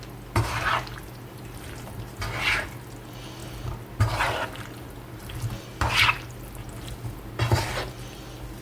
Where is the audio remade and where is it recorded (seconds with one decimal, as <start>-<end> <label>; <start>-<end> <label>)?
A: 0.0-8.6 recorded